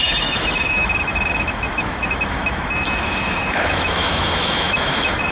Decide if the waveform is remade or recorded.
remade